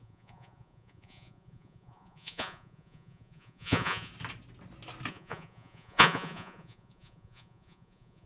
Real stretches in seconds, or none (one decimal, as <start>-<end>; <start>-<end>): 4.1-5.1